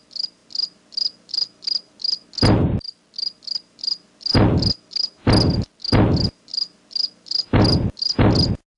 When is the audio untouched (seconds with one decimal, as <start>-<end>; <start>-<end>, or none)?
0.0-8.8